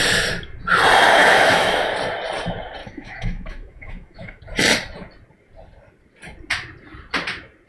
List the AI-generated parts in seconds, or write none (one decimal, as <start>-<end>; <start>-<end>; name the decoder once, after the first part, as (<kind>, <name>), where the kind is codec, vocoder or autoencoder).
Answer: 1.2-1.9 (autoencoder, DAC-VAE); 2.8-4.4